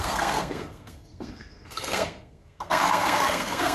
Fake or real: fake